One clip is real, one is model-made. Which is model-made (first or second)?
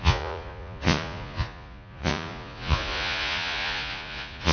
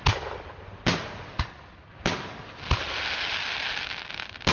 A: first